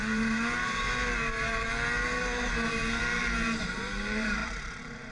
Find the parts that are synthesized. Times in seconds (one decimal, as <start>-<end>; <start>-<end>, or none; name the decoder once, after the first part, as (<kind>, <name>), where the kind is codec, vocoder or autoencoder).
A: 0.0-5.1 (vocoder, BigVGAN v2)